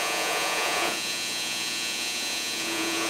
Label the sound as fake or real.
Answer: fake